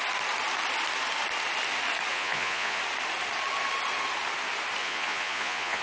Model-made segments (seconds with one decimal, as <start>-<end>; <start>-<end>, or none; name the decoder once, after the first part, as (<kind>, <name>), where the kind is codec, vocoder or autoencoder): 2.1-2.8 (vocoder, Vocos); 4.8-5.8